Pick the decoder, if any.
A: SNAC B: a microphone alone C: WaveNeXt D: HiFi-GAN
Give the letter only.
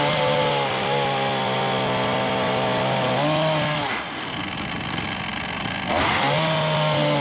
B